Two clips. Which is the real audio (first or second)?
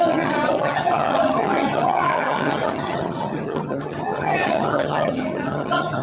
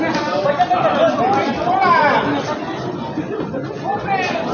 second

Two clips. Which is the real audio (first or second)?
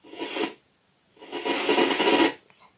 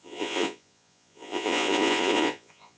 first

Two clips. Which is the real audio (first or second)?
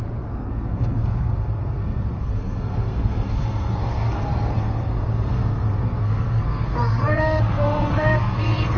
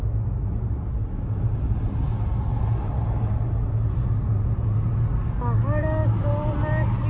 second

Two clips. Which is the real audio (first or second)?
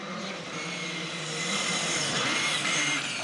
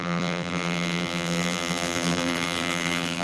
first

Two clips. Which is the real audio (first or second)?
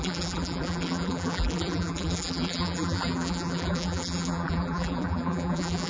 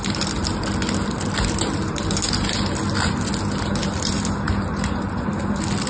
second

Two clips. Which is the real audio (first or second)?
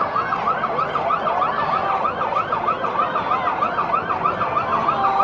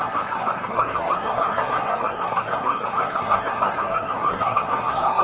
first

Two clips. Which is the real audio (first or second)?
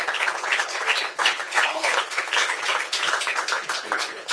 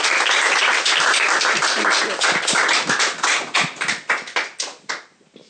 second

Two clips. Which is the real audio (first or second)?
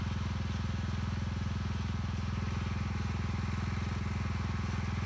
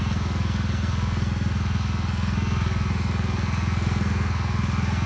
first